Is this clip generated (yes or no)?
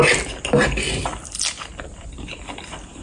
no